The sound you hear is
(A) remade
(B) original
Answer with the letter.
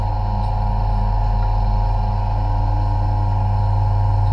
B